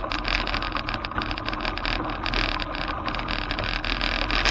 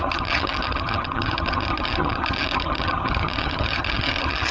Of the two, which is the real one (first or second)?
first